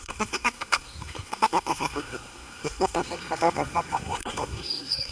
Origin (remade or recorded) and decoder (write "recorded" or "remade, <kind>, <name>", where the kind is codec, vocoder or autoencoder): remade, codec, SNAC